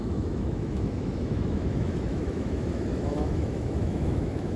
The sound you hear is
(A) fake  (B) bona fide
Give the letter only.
A